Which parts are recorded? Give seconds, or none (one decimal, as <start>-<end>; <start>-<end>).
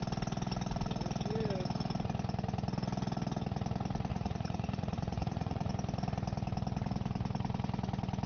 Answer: 0.0-4.1; 5.7-8.3